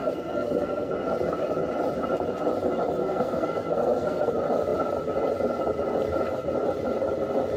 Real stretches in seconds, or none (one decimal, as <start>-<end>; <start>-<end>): 0.9-3.0; 4.3-7.6